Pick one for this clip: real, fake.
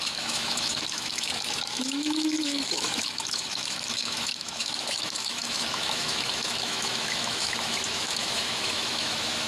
fake